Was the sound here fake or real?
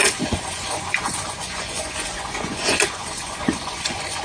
fake